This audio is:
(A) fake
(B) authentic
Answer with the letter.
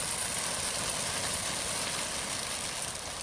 B